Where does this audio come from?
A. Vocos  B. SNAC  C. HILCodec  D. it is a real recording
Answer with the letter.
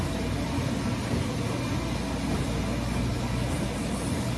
D